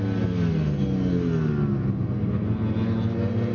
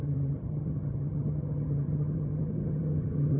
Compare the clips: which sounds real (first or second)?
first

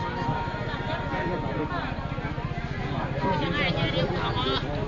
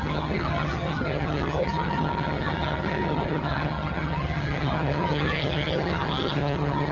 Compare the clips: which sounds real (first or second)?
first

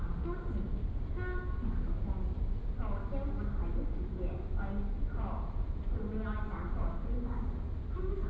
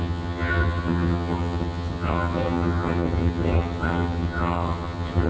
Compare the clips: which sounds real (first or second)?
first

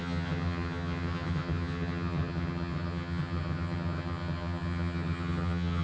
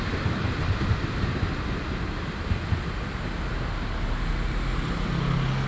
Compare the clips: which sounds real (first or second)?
second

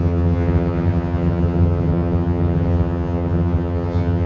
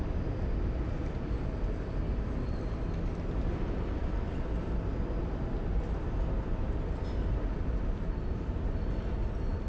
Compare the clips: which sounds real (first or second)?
second